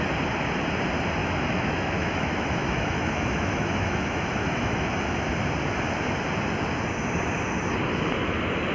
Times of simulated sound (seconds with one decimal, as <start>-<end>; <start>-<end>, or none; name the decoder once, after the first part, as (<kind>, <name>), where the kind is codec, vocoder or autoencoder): 1.2-5.1 (autoencoder, DAC-VAE)